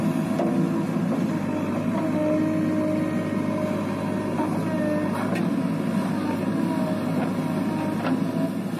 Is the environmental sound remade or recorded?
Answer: recorded